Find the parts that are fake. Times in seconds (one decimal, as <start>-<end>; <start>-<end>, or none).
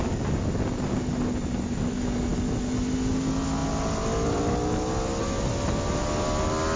none